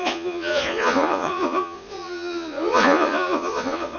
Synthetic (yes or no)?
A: yes